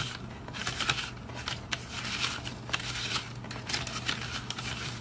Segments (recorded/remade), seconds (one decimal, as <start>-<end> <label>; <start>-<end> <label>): 0.0-5.0 recorded